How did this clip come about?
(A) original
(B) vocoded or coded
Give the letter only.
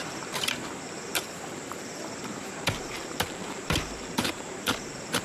B